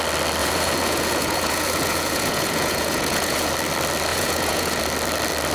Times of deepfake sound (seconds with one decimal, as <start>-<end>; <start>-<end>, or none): 0.4-3.5; 4.1-4.8